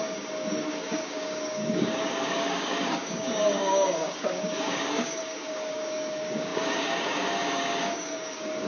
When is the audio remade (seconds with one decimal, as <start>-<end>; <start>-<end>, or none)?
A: 0.0-8.7